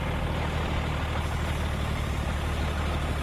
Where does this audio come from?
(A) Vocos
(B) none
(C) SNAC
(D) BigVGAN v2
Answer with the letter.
B